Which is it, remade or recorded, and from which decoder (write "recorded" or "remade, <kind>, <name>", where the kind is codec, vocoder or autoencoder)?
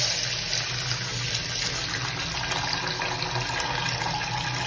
recorded